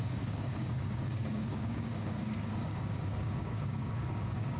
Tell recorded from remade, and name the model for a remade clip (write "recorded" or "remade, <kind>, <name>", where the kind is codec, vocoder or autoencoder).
remade, codec, DAC